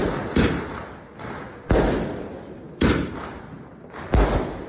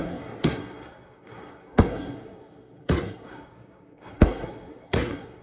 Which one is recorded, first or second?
first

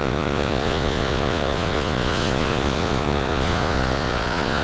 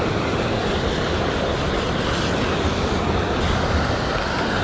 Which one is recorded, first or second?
second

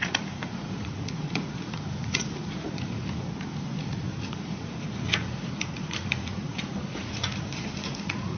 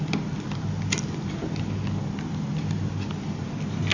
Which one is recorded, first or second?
second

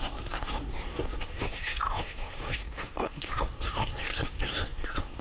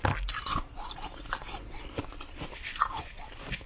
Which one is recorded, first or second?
second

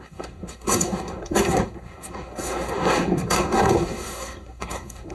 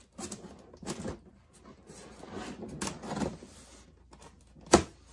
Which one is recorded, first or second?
second